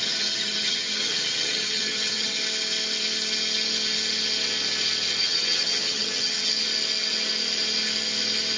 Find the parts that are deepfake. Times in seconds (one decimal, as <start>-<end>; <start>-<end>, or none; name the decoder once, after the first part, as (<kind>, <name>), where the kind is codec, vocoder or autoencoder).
0.0-2.4 (vocoder, HiFi-GAN); 5.2-6.5